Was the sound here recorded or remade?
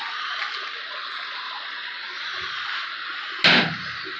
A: recorded